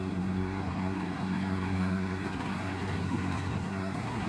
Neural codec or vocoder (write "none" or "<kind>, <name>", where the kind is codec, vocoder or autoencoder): codec, SNAC